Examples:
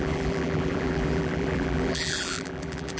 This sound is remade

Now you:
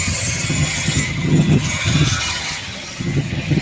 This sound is remade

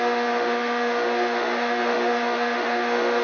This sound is remade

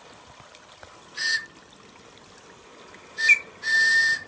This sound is recorded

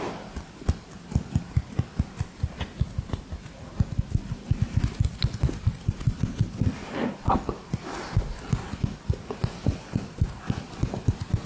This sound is recorded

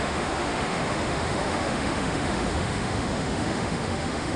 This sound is remade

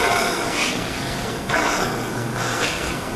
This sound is remade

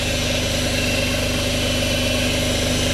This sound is recorded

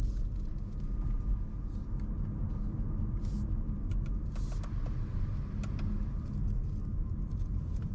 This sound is recorded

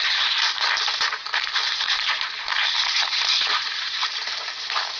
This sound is remade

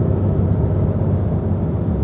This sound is recorded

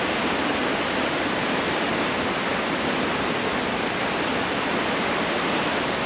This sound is recorded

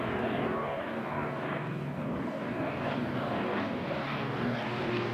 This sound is remade